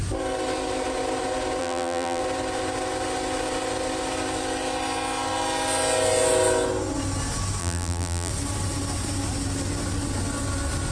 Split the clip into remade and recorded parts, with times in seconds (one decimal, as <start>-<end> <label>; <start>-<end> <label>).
0.0-1.6 recorded; 1.6-2.2 remade; 2.2-7.6 recorded; 7.6-8.3 remade; 8.3-10.9 recorded